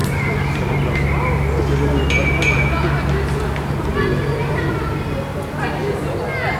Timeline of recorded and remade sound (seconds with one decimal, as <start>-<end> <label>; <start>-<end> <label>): 0.0-6.6 recorded